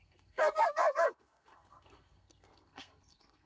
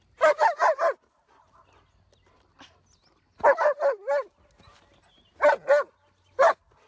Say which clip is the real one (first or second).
second